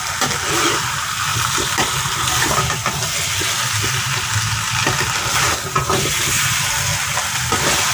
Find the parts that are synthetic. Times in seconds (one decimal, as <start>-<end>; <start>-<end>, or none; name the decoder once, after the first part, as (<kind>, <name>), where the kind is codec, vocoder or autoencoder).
1.3-3.1 (vocoder, BigVGAN v2); 6.9-7.9

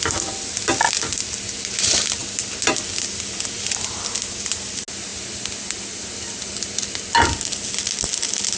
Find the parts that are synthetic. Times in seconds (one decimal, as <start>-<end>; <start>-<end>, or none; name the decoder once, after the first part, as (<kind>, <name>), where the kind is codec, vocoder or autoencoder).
none

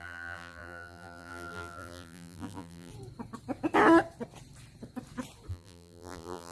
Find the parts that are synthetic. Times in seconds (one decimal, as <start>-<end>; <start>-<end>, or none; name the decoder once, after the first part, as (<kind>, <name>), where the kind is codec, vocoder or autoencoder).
0.0-2.9 (vocoder, BigVGAN v2); 5.5-6.5